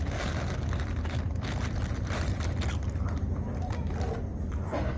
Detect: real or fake real